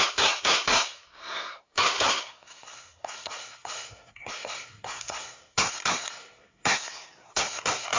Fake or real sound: fake